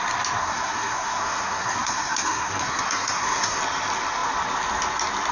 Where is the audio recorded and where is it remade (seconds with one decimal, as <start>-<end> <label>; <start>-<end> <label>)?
0.0-0.4 recorded; 0.4-3.6 remade; 3.6-5.3 recorded